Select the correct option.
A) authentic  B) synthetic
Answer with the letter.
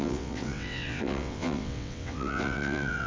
B